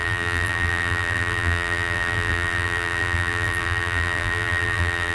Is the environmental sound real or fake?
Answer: fake